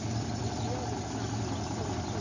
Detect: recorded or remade recorded